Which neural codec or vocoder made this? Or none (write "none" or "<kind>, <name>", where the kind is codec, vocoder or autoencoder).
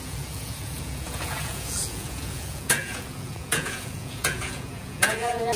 vocoder, Vocos